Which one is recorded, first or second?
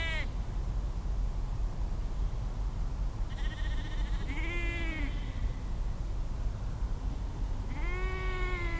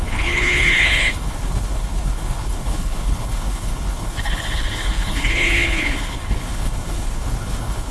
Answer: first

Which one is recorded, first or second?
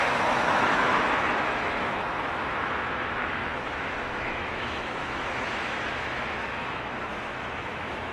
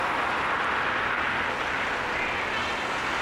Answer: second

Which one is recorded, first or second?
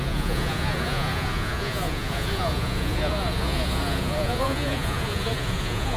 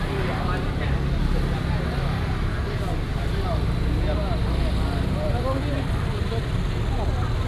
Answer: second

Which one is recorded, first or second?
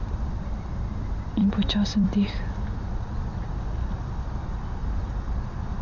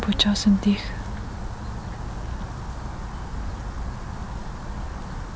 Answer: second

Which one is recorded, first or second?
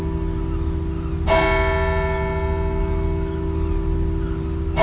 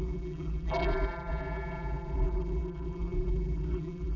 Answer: first